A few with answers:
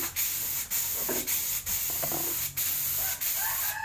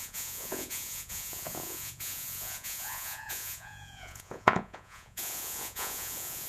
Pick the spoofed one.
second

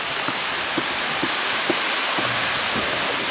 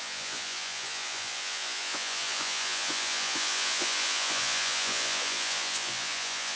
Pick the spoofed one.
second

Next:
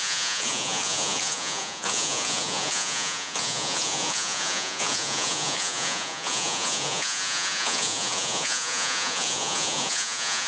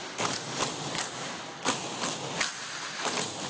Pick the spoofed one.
first